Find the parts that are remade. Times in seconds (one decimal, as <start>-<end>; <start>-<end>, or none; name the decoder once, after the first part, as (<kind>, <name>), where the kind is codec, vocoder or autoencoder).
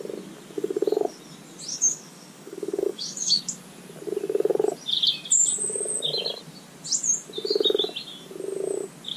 1.7-3.4 (codec, DAC)